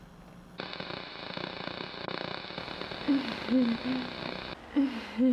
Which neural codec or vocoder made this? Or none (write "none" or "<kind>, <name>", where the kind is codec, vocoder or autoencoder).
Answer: none